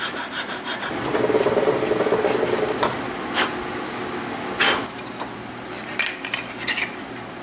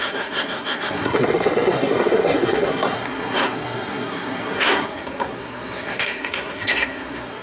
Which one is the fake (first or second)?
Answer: second